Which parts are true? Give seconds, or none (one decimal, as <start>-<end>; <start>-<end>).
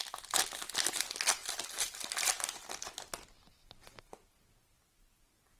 0.0-5.6